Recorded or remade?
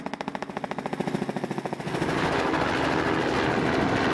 recorded